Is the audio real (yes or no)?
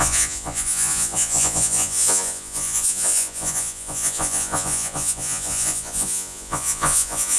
no